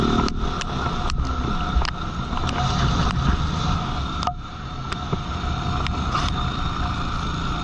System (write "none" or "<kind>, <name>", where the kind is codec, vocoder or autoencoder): none